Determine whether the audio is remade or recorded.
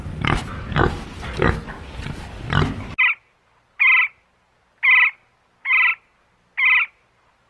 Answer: recorded